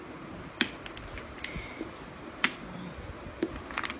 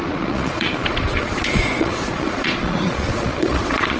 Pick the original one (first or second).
first